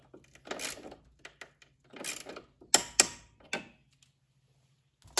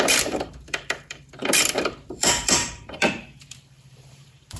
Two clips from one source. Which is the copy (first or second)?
second